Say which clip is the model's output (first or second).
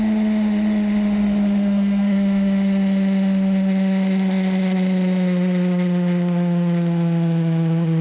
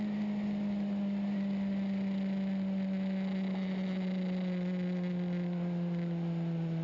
first